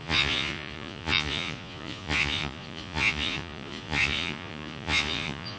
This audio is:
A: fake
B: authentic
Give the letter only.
A